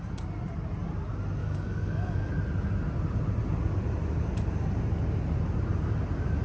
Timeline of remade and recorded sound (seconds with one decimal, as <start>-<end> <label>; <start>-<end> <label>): 0.0-1.4 recorded; 1.4-2.3 remade; 2.3-6.4 recorded